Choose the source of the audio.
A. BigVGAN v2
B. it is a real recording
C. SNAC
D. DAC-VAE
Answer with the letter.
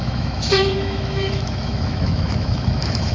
D